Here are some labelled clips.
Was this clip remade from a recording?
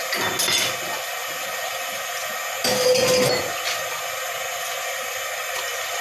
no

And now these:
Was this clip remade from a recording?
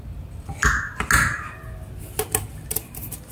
no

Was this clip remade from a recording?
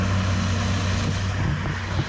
no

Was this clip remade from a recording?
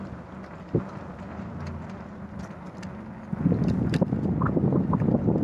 no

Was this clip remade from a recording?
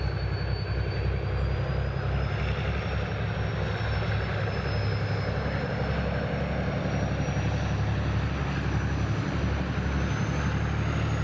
no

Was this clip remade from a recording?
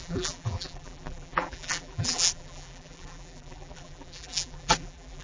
yes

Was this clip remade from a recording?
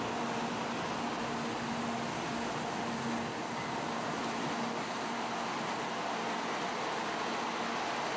no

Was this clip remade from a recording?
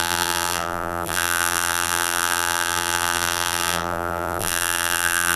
yes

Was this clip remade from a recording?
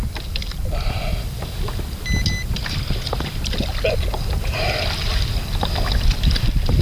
no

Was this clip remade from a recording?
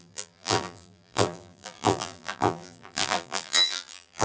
yes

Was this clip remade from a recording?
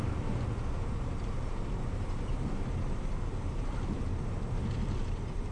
no